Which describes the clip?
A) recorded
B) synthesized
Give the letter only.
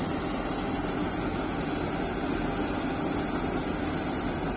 A